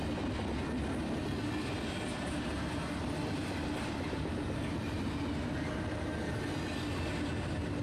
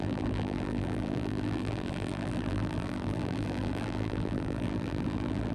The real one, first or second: first